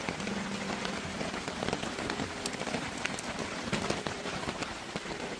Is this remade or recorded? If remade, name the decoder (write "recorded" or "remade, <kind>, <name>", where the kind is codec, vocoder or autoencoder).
remade, vocoder, BigVGAN v2